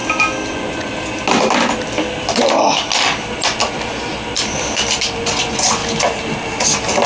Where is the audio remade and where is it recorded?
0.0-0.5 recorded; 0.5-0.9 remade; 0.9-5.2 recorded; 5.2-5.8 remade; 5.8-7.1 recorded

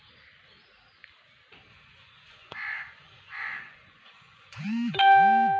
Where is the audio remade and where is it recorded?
0.0-1.7 recorded; 1.7-5.0 remade; 5.0-5.6 recorded